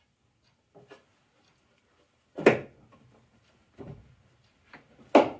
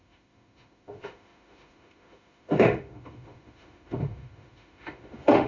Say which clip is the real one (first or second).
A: first